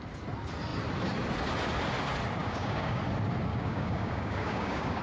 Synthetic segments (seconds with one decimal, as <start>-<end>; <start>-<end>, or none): 2.4-3.0; 3.5-5.0